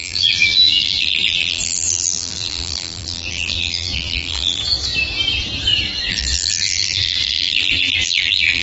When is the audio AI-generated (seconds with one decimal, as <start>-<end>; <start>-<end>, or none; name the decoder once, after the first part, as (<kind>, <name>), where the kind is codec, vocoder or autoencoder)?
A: 0.0-4.6 (vocoder, BigVGAN v2); 6.1-8.6